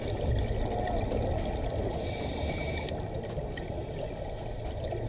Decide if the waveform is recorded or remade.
recorded